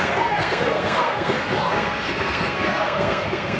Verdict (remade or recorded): remade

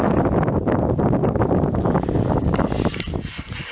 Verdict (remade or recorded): recorded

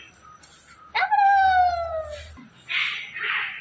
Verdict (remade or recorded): recorded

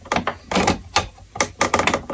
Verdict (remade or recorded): recorded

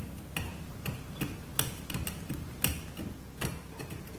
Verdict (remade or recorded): remade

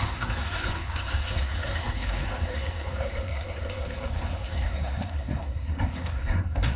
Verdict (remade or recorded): remade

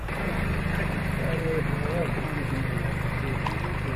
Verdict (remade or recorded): remade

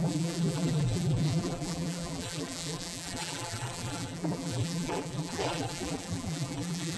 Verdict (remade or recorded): remade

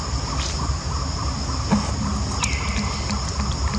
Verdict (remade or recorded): recorded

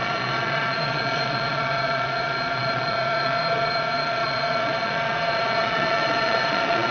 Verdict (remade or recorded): remade